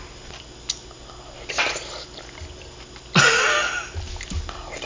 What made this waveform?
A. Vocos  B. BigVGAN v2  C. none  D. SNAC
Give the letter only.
C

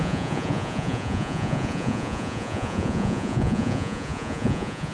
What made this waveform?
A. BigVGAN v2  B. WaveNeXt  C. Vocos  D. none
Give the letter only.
C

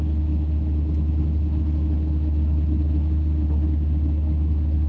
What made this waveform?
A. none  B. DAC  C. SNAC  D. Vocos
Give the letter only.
A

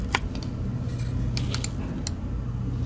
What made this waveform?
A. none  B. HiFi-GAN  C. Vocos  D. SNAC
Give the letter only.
A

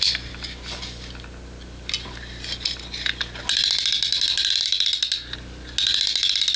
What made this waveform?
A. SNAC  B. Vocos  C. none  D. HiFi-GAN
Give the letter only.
C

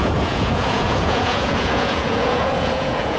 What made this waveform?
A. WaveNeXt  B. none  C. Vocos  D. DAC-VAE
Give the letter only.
C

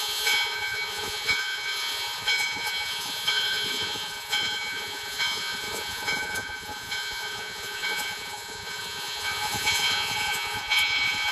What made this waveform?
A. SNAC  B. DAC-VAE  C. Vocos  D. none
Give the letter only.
C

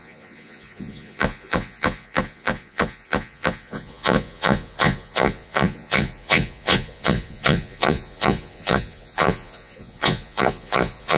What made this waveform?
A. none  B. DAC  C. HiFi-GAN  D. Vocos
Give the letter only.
D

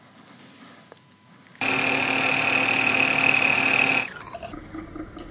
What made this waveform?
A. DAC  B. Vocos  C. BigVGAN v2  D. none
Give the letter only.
D